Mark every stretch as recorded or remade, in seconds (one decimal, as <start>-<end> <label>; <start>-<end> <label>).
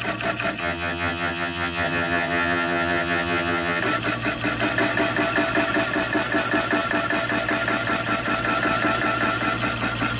0.0-0.6 recorded; 0.6-3.8 remade; 3.8-10.2 recorded